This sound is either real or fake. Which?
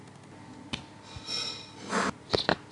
real